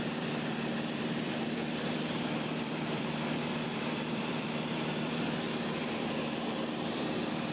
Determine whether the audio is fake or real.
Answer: fake